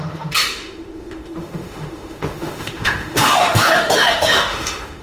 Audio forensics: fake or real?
fake